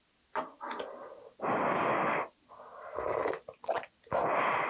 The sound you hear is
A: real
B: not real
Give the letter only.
A